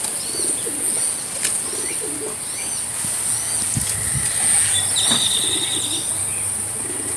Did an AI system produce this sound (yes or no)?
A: no